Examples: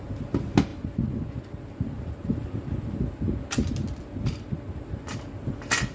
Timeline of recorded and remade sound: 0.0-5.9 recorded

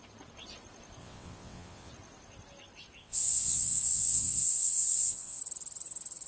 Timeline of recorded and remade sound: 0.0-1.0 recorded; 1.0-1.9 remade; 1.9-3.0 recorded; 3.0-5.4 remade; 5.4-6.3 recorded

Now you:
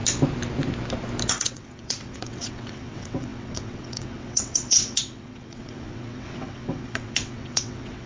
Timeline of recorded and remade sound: 0.0-1.3 recorded; 1.3-8.1 remade

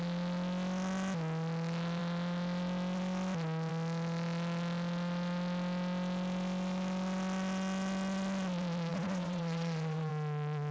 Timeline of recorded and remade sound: 0.0-8.9 recorded; 8.9-10.1 remade; 10.1-10.7 recorded